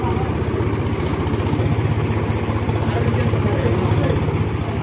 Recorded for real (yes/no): yes